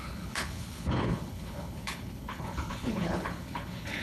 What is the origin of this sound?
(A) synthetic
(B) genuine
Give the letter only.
A